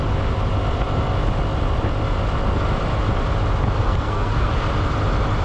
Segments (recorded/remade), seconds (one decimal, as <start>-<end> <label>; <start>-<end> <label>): 0.0-3.8 recorded; 3.8-4.5 remade; 4.5-5.4 recorded